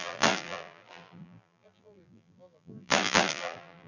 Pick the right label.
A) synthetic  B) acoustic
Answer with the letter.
A